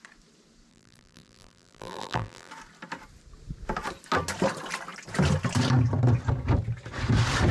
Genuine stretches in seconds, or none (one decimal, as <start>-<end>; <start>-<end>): 0.0-0.7; 2.5-7.5